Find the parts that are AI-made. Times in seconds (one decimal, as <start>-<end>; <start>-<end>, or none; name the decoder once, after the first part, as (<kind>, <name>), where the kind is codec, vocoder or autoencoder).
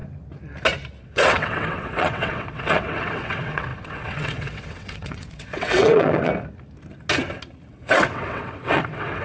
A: 1.0-6.3 (vocoder, WaveNeXt); 7.7-9.2